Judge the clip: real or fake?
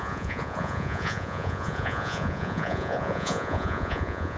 fake